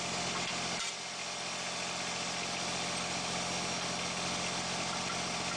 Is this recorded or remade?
recorded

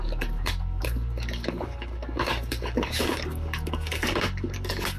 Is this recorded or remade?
remade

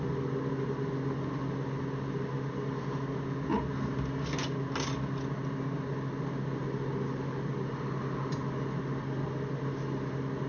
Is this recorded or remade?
recorded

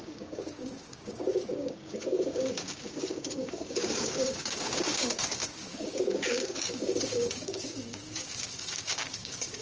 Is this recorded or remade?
remade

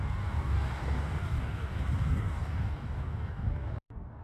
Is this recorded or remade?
remade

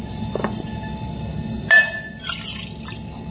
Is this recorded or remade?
recorded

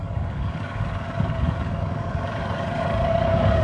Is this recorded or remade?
remade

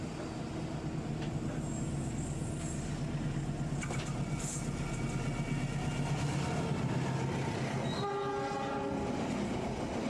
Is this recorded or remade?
recorded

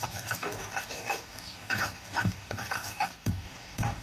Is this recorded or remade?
remade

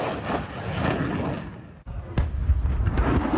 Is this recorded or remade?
recorded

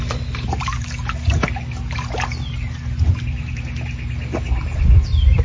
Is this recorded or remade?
recorded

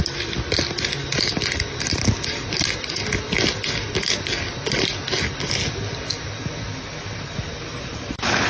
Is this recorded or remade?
recorded